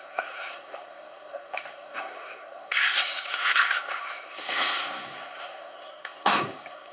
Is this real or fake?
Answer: fake